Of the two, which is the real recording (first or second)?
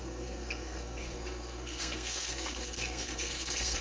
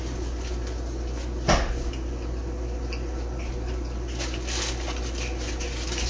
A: second